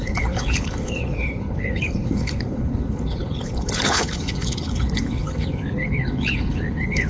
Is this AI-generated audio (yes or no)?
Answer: yes